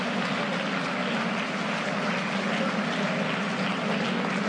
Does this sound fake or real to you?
real